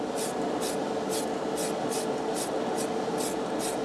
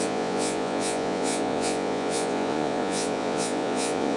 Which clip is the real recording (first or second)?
first